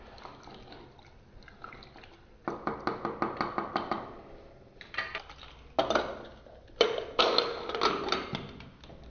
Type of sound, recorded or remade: recorded